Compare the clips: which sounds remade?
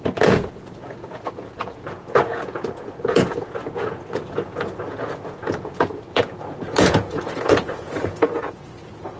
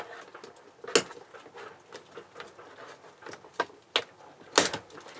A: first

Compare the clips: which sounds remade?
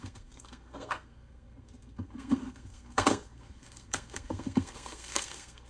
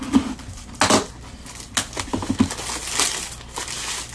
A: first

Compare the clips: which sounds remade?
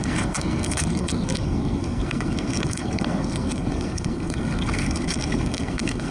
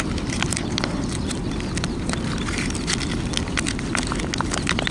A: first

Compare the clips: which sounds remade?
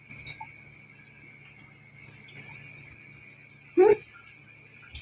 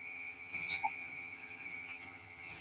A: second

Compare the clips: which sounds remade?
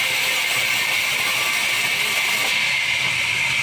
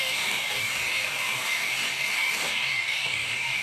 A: second